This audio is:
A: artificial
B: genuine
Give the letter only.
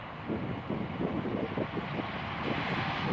B